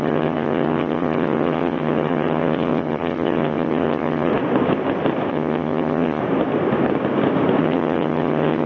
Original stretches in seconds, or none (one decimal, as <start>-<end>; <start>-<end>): 4.3-5.3; 6.2-7.6